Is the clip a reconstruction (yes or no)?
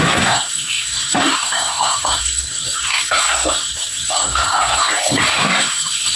yes